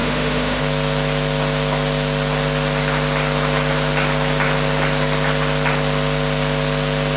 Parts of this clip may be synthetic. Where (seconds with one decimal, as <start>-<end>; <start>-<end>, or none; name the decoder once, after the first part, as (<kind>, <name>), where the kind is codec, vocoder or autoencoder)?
0.0-0.6 (autoencoder, DAC-VAE)